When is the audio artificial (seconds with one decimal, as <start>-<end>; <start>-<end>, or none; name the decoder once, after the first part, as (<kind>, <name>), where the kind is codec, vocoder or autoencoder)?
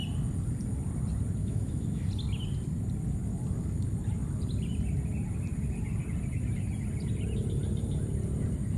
1.4-2.1 (autoencoder, DAC-VAE)